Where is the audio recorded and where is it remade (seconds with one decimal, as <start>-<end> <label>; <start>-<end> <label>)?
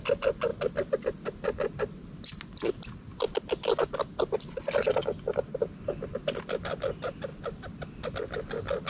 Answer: 0.0-8.9 recorded